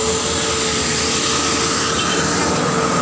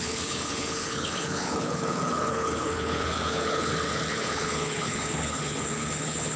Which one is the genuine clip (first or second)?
first